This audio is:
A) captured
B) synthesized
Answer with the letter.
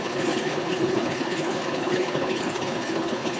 B